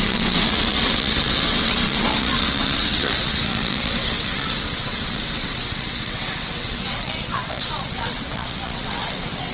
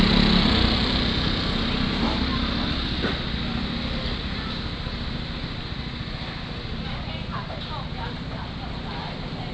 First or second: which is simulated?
first